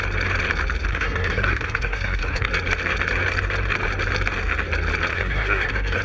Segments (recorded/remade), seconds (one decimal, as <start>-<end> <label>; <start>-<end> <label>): 0.0-0.9 recorded; 0.9-2.5 remade; 2.5-5.1 recorded; 5.1-6.0 remade